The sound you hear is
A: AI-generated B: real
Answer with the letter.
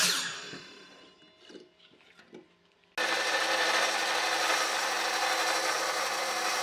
B